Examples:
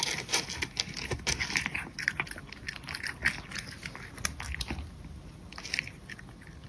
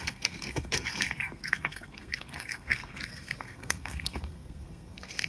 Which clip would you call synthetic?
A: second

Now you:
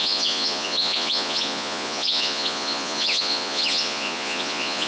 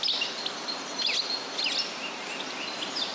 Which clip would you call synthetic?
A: first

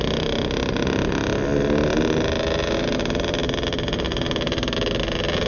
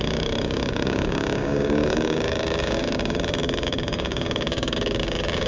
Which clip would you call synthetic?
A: second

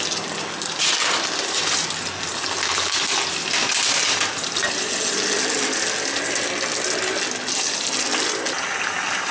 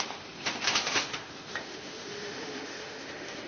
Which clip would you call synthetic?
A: second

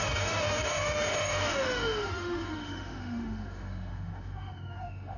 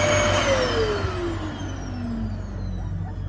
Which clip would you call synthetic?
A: first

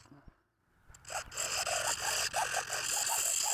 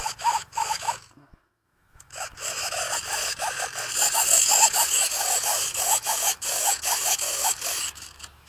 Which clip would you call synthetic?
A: second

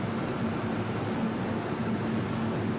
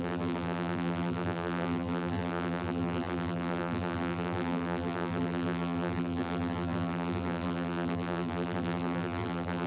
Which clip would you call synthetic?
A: second